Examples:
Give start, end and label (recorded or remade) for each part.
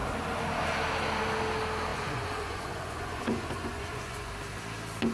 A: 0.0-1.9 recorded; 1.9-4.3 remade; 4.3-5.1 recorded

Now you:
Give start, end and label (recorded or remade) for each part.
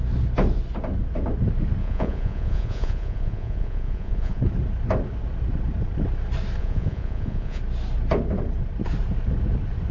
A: 0.0-1.8 recorded; 1.8-4.4 remade; 4.4-6.6 recorded; 6.6-7.6 remade; 7.6-9.9 recorded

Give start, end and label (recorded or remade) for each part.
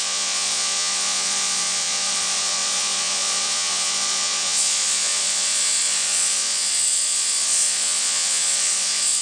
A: 0.0-9.2 remade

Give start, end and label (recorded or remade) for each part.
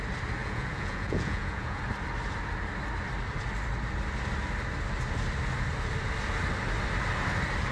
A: 0.0-0.4 recorded; 0.4-1.8 remade; 1.8-7.7 recorded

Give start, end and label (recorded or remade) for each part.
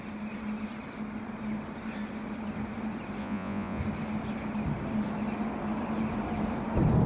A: 0.0-3.2 recorded; 3.2-3.8 remade; 3.8-7.1 recorded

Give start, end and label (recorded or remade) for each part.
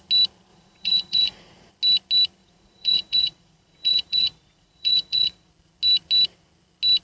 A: 0.0-0.5 recorded; 0.5-1.7 remade; 1.7-2.4 recorded; 2.4-5.5 remade; 5.5-7.0 recorded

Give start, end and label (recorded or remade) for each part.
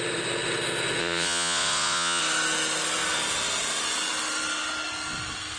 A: 0.0-1.0 recorded; 1.0-2.2 remade; 2.2-5.6 recorded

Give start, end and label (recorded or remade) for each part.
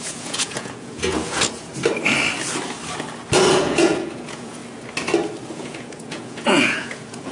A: 0.0-1.7 remade; 1.7-3.5 recorded; 3.5-4.6 remade; 4.6-5.5 recorded; 5.5-7.3 remade